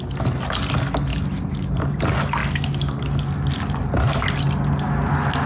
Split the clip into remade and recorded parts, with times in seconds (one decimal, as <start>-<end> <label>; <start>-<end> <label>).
0.0-1.1 recorded; 1.1-2.0 remade; 2.0-5.5 recorded